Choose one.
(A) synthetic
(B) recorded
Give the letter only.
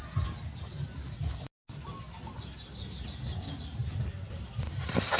B